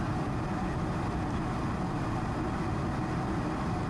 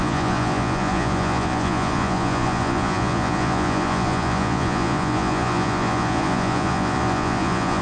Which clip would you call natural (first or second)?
first